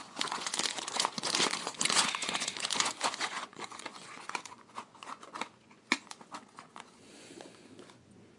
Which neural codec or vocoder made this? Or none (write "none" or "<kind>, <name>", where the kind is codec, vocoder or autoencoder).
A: vocoder, Vocos